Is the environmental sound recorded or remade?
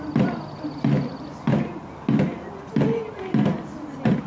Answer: recorded